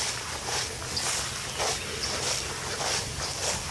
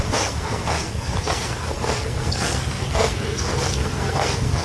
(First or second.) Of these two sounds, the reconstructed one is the second